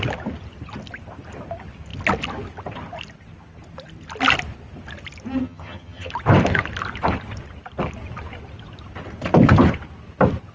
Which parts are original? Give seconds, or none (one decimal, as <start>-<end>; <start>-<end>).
0.0-5.4; 6.1-10.5